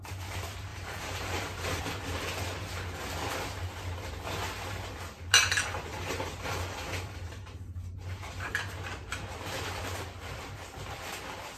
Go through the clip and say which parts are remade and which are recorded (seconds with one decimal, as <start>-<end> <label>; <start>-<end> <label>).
0.0-0.7 recorded; 0.7-1.8 remade; 1.8-5.9 recorded; 5.9-8.5 remade; 8.5-11.6 recorded